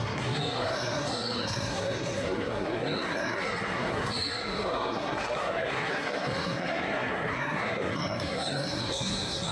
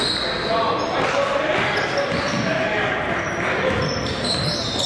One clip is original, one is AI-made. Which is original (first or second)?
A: second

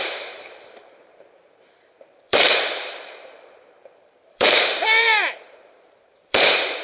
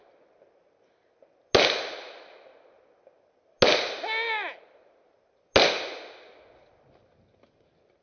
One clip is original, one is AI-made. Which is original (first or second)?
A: second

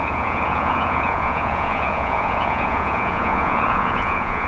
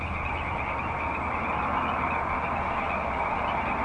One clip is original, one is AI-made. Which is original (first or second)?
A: second